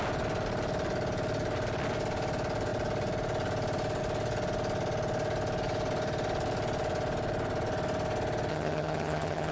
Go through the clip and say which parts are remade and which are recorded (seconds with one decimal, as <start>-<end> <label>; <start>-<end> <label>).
0.0-8.5 recorded; 8.5-9.5 remade